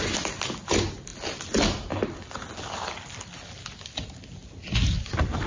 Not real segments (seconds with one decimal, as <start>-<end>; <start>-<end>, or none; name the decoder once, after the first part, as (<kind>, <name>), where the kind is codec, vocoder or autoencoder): none